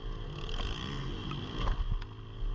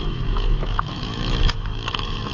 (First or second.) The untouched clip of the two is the first